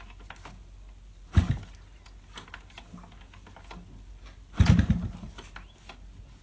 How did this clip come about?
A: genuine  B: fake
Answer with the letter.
A